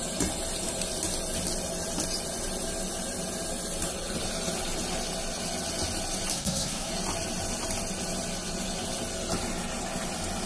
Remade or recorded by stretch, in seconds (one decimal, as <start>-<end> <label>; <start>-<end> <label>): 0.0-6.3 recorded; 6.3-6.9 remade; 6.9-10.5 recorded